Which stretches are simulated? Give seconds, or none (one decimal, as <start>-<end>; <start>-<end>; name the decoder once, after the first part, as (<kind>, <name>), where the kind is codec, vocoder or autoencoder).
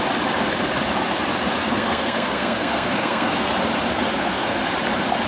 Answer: 1.6-3.5 (codec, SNAC); 4.1-4.6